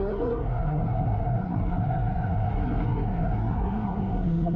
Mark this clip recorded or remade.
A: remade